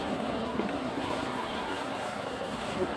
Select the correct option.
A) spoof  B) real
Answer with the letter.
A